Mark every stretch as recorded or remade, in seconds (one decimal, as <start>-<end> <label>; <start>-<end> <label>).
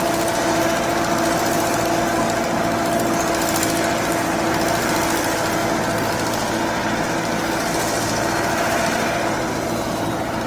0.0-10.5 recorded